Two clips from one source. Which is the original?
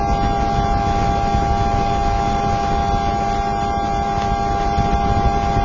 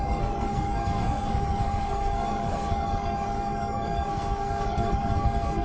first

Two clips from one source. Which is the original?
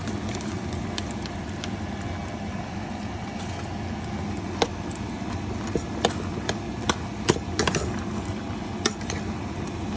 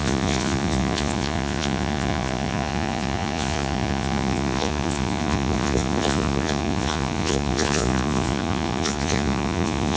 first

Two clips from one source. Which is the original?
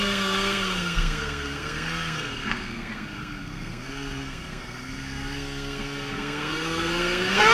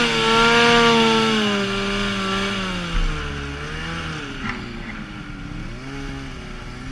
second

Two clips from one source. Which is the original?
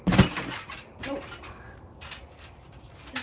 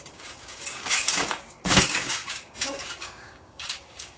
first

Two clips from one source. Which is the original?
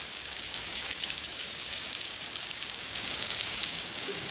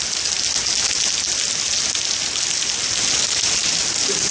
second